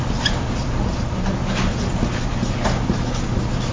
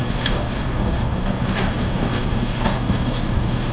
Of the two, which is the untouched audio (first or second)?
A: first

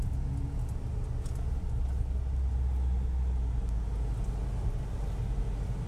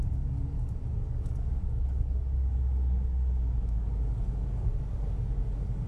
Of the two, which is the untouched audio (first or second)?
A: first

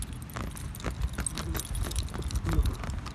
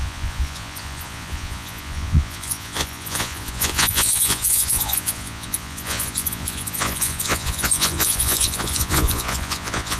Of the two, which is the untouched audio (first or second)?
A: first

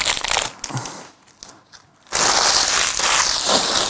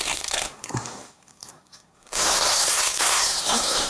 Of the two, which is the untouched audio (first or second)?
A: first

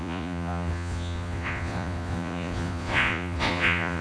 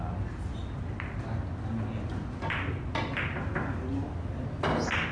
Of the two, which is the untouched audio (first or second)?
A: second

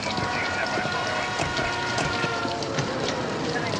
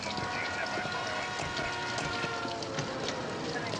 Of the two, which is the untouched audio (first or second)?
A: second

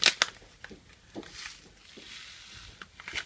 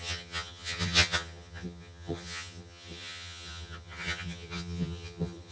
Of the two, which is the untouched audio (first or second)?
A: first